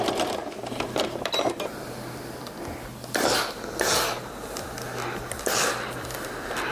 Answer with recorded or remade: recorded